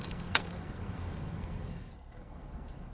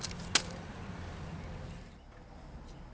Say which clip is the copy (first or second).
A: first